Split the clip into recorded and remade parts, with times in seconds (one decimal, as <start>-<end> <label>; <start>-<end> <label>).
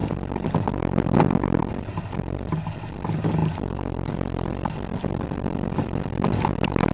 0.0-4.9 recorded; 4.9-6.3 remade; 6.3-6.9 recorded